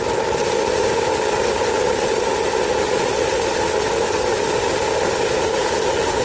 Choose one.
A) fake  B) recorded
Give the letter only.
B